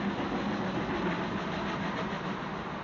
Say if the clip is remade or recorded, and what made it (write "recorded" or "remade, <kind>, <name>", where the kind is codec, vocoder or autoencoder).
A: recorded